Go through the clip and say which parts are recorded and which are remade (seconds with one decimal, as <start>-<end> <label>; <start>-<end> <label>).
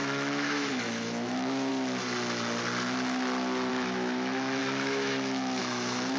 0.0-1.7 remade; 1.7-3.7 recorded; 3.7-6.2 remade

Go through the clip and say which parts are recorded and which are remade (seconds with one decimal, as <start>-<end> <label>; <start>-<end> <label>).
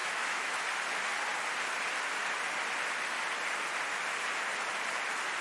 0.0-0.5 remade; 0.5-5.4 recorded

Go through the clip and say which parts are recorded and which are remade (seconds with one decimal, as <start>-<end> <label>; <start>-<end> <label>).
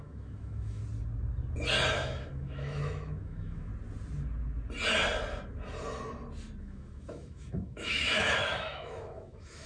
0.0-0.8 remade; 0.8-1.9 recorded; 1.9-3.7 remade; 3.7-6.6 recorded; 6.6-9.7 remade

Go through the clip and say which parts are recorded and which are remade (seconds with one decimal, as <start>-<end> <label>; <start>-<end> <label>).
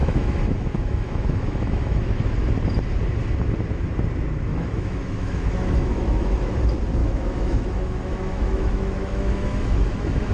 0.0-2.4 remade; 2.4-4.5 recorded; 4.5-6.5 remade; 6.5-7.0 recorded; 7.0-10.3 remade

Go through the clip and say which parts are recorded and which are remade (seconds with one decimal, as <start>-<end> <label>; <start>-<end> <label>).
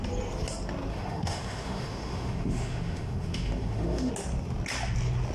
0.0-0.9 recorded; 0.9-4.1 remade; 4.1-5.3 recorded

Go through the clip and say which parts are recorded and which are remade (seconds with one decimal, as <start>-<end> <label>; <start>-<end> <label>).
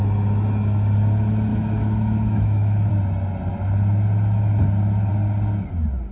0.0-1.5 recorded; 1.5-2.9 remade; 2.9-6.1 recorded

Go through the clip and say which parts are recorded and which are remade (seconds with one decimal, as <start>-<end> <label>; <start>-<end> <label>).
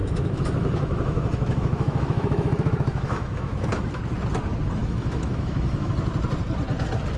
0.0-4.0 remade; 4.0-4.8 recorded; 4.8-5.9 remade; 5.9-7.2 recorded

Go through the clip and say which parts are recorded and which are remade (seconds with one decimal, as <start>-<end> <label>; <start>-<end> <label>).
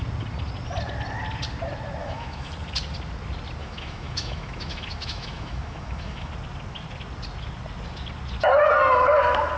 0.0-2.0 recorded; 2.0-2.5 remade; 2.5-3.6 recorded; 3.6-6.3 remade; 6.3-9.6 recorded